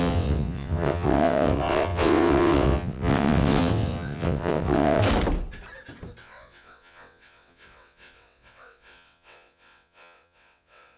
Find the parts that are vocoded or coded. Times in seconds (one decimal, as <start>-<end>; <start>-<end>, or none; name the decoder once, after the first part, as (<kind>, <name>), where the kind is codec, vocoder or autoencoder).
0.0-5.0 (vocoder, WaveNeXt); 6.2-11.0